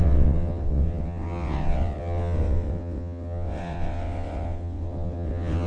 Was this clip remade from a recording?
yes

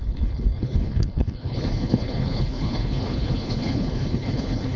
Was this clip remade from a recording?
yes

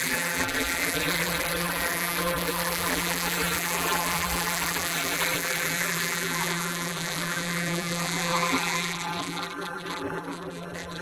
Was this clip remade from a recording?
yes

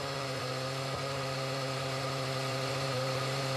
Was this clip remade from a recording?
yes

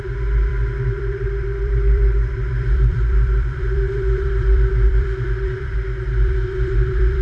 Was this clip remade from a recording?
yes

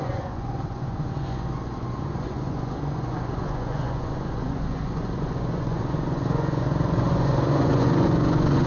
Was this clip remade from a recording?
yes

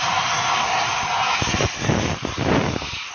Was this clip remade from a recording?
no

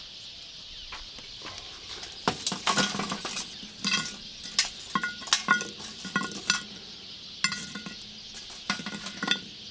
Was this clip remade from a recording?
no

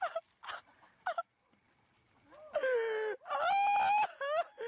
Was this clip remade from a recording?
no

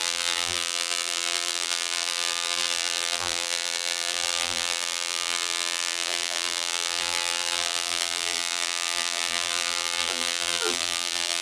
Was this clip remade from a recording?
yes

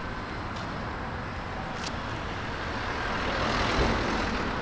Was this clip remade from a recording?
no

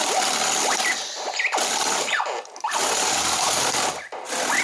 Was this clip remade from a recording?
no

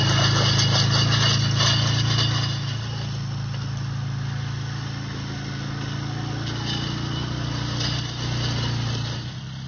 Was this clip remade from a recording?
no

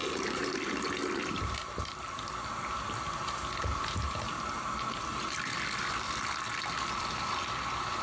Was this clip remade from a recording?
no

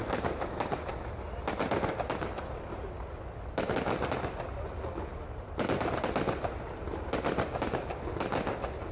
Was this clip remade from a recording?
no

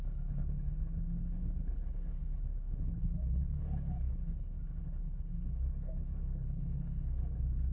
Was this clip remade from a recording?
yes